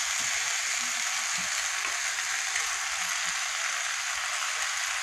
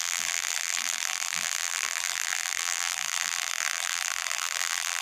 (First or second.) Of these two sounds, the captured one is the first